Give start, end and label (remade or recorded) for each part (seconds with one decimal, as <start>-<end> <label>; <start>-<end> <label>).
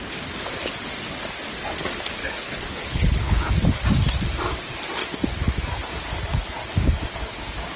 0.0-2.2 recorded; 2.2-3.5 remade; 3.5-5.0 recorded; 5.0-5.6 remade; 5.6-7.8 recorded